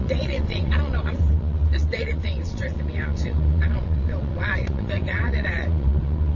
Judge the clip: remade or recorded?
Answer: remade